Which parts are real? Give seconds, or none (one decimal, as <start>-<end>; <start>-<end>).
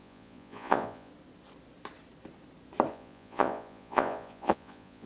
1.1-2.9